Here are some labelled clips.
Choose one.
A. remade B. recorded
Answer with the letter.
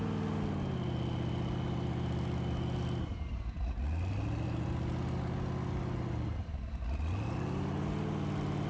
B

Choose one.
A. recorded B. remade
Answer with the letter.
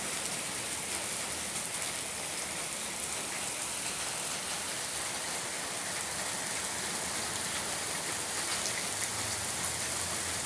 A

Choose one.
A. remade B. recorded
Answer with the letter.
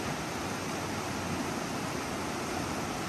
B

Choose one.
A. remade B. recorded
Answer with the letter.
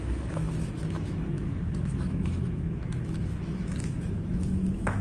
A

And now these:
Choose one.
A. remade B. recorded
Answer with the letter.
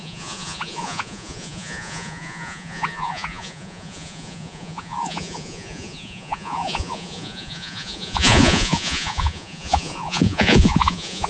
A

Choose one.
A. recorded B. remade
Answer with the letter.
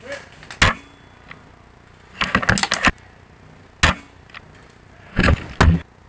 A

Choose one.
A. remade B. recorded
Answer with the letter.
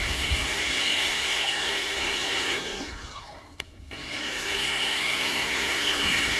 A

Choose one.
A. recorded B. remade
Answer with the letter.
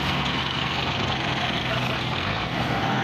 B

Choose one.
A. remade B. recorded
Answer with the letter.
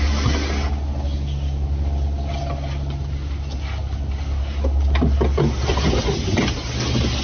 B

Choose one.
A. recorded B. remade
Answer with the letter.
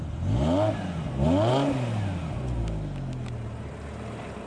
A